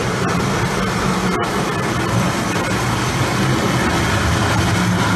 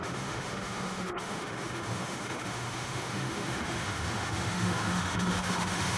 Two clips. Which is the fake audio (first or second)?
second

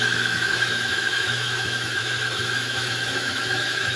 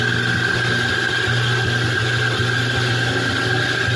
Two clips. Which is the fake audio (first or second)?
first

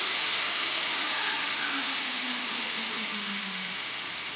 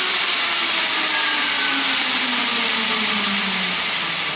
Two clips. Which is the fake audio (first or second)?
first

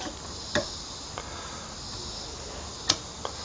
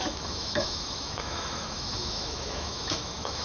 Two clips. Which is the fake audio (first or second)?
second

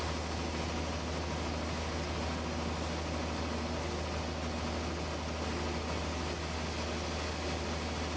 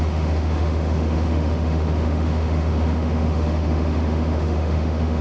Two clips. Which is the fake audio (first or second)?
second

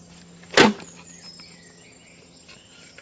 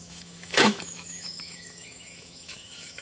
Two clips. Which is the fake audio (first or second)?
second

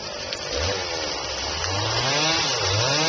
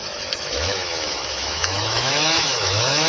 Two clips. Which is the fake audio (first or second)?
second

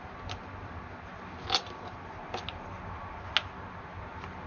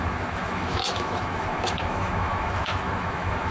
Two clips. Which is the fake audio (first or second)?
second